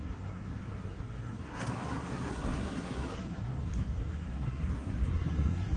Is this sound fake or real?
fake